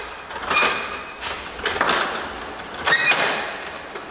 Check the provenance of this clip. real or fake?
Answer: real